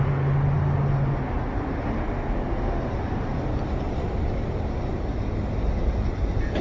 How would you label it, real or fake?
real